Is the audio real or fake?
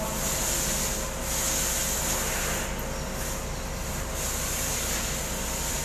real